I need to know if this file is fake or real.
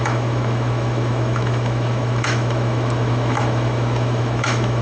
fake